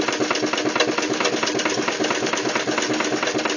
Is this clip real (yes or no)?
yes